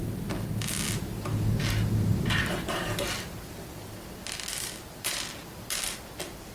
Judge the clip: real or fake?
real